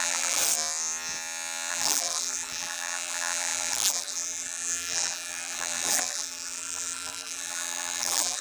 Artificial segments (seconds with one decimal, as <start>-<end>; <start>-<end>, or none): 0.0-0.4; 1.7-8.4